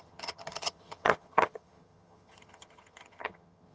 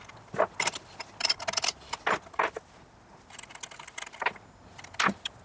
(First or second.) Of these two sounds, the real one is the second